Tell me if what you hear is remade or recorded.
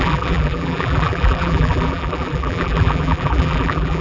remade